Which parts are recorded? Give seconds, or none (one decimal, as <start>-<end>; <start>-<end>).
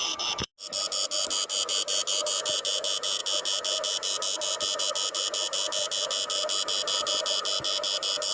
0.5-8.3